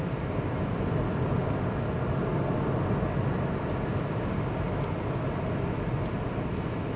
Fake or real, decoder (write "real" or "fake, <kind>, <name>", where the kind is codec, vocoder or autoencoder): real